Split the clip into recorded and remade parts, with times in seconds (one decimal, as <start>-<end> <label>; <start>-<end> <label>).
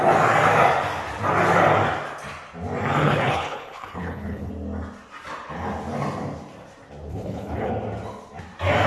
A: 0.0-3.0 recorded; 3.0-4.5 remade; 4.5-7.1 recorded; 7.1-7.7 remade; 7.7-8.9 recorded